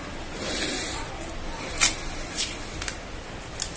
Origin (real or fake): real